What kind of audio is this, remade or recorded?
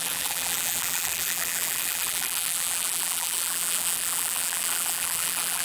remade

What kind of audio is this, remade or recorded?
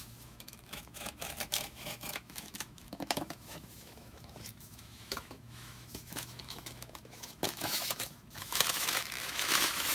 remade